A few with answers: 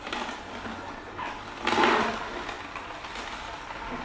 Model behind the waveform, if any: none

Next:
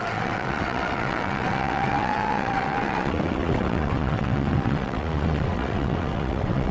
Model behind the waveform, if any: vocoder, WaveNeXt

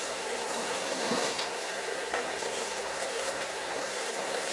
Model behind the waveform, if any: codec, SNAC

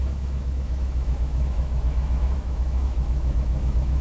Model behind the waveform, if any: autoencoder, DAC-VAE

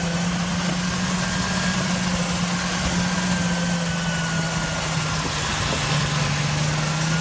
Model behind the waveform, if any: none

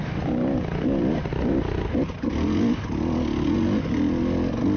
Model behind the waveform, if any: none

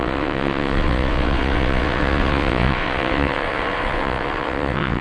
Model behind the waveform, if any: vocoder, WaveNeXt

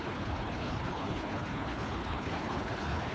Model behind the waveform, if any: codec, HILCodec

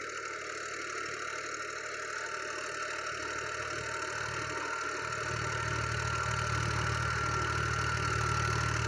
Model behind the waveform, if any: none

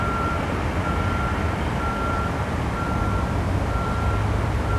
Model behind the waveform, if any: vocoder, BigVGAN v2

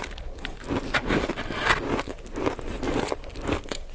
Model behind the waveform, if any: none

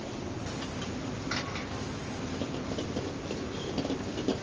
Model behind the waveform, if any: none